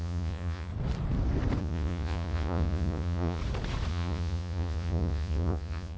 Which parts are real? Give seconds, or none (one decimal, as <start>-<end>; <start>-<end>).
0.7-1.6; 3.4-3.9